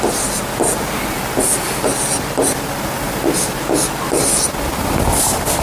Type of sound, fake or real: real